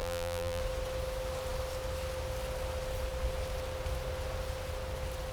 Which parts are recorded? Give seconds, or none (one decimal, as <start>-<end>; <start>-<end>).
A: 0.6-5.3